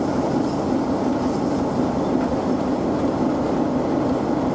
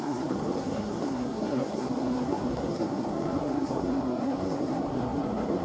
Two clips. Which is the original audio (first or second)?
first